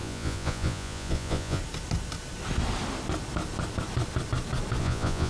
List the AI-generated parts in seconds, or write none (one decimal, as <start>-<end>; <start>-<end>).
0.0-1.6; 4.8-5.3